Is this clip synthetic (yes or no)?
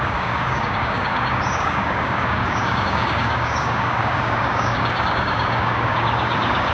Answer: yes